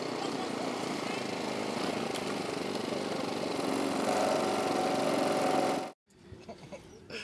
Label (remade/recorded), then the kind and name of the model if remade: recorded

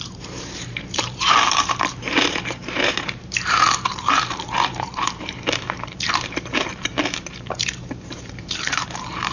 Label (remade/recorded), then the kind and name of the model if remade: remade, vocoder, BigVGAN v2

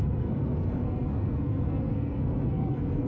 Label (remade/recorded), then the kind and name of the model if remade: remade, codec, SNAC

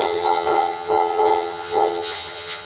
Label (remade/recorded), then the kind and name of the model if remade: remade, vocoder, HiFi-GAN